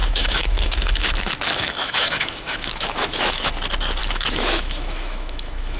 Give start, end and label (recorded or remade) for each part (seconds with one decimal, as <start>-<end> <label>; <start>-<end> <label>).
0.0-3.5 remade; 3.5-4.0 recorded; 4.0-5.8 remade

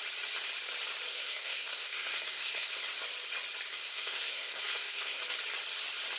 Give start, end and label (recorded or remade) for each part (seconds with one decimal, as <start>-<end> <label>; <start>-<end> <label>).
0.0-1.1 recorded; 1.1-2.7 remade; 2.7-3.7 recorded; 3.7-5.2 remade; 5.2-6.2 recorded